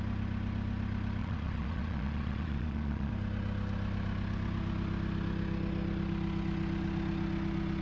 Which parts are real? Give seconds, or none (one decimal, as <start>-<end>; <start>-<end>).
0.0-1.2; 3.1-7.8

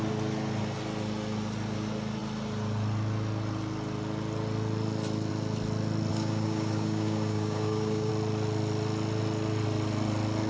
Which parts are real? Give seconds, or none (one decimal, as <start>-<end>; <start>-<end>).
0.0-6.1; 8.1-10.5

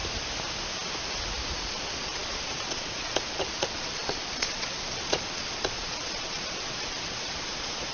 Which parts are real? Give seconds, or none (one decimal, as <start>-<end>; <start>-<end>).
0.0-1.5

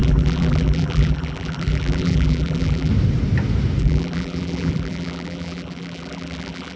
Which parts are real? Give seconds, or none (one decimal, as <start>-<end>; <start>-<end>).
2.9-3.8

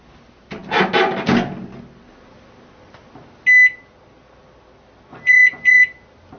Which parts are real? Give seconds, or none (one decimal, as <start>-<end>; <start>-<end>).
0.0-5.1; 5.8-6.4